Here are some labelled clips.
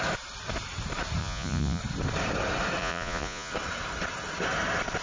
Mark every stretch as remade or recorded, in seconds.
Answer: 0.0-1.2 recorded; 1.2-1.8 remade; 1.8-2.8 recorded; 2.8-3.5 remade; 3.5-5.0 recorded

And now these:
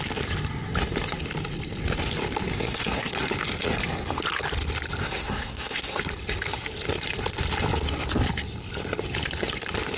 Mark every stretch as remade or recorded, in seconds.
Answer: 0.0-2.5 recorded; 2.5-3.1 remade; 3.1-5.0 recorded; 5.0-6.0 remade; 6.0-10.0 recorded

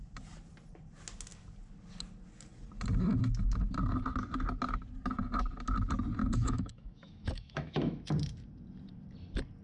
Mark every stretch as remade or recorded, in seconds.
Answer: 0.0-6.2 recorded; 6.2-8.0 remade; 8.0-9.6 recorded

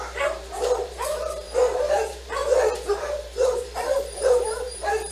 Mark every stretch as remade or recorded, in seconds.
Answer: 0.0-5.1 remade